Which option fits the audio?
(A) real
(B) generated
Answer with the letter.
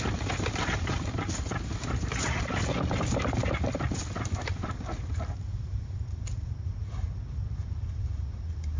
A